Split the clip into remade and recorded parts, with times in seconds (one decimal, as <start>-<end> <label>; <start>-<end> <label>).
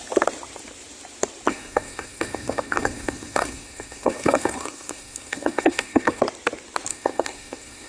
0.0-1.5 recorded; 1.5-6.2 remade; 6.2-6.9 recorded; 6.9-7.9 remade